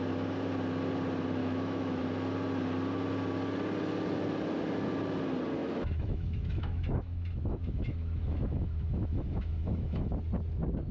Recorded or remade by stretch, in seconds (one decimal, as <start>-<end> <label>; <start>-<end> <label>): 0.0-1.4 recorded; 1.4-2.0 remade; 2.0-5.6 recorded; 5.6-10.1 remade; 10.1-10.9 recorded